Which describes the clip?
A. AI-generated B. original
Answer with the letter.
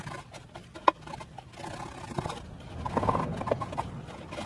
B